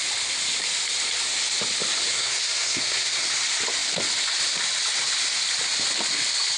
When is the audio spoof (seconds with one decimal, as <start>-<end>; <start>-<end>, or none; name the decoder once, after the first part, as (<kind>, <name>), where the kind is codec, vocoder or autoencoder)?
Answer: 2.1-3.2 (codec, SNAC)